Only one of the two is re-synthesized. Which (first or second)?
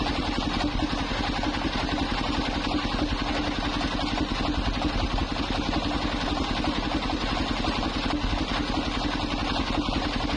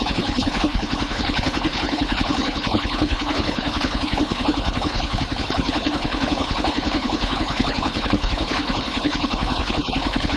second